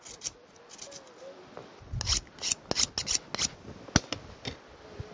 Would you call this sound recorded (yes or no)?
yes